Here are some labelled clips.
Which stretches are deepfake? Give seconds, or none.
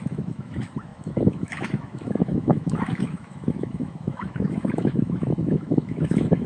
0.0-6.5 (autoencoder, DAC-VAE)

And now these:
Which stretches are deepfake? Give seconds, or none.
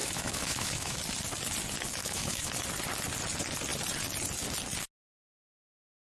0.0-1.0 (autoencoder, DAC-VAE); 2.0-2.5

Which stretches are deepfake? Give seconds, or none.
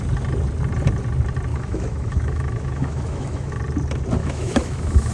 1.5-3.6 (autoencoder, DAC-VAE); 4.2-5.1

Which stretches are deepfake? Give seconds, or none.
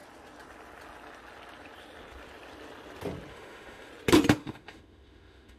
3.3-3.9 (autoencoder, DAC-VAE); 4.4-5.6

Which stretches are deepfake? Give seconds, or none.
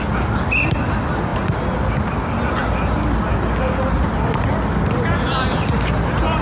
none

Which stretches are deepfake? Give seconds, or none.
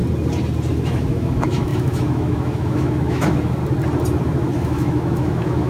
0.7-3.6 (autoencoder, DAC-VAE); 4.2-5.7